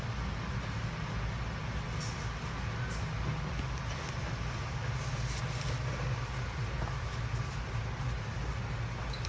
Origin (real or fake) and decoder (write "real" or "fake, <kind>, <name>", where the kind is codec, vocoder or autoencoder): real